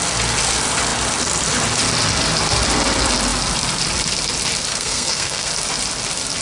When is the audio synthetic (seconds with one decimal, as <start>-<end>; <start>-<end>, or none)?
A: 4.7-5.5